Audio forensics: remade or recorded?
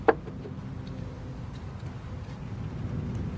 recorded